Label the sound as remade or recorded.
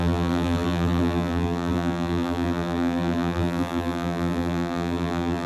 remade